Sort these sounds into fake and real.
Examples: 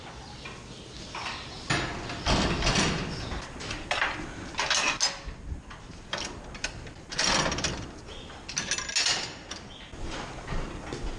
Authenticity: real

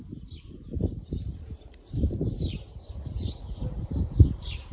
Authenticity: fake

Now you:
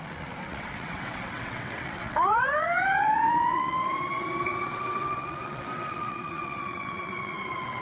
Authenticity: fake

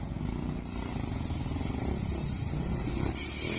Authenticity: real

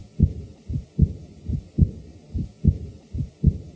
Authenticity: real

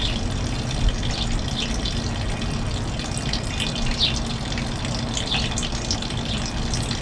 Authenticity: real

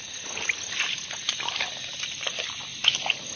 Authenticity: real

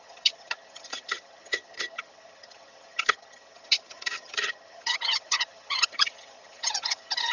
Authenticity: fake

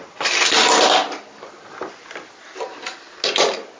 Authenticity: real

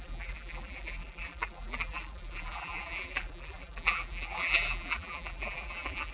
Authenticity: fake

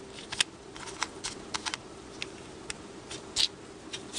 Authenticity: real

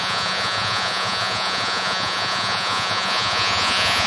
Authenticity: fake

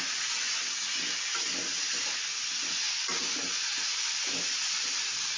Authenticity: real